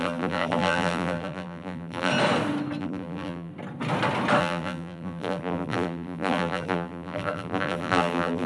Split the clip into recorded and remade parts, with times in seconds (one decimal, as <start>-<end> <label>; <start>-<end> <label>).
0.0-2.1 remade; 2.1-2.8 recorded; 2.8-3.5 remade; 3.5-4.4 recorded; 4.4-8.5 remade